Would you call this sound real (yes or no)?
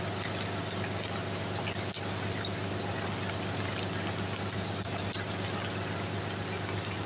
yes